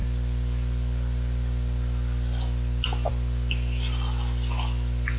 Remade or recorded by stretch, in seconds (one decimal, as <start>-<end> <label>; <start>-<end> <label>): 0.0-5.2 recorded

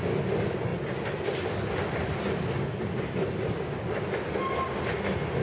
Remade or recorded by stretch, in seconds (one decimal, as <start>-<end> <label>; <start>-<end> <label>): 0.0-5.4 recorded

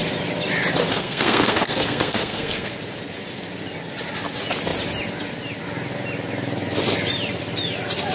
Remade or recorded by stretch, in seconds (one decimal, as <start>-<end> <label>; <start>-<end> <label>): 0.0-0.9 recorded; 0.9-2.7 remade; 2.7-8.1 recorded

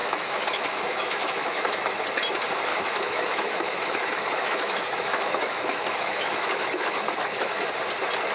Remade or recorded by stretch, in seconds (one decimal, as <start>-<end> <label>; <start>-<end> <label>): 0.0-1.9 remade; 1.9-2.7 recorded; 2.7-7.7 remade; 7.7-8.3 recorded